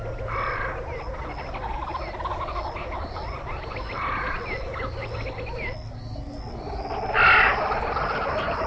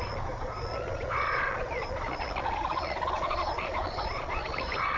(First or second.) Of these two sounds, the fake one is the second